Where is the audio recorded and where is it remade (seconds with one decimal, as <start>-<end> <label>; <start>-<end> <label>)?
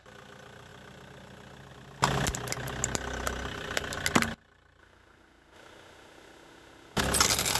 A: 0.0-4.8 recorded; 4.8-7.0 remade; 7.0-7.6 recorded